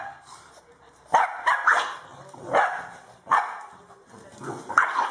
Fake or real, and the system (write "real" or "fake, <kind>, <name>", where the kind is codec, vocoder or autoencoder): real